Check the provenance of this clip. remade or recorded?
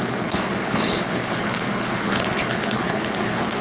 remade